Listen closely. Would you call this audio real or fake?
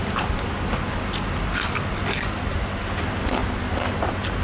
real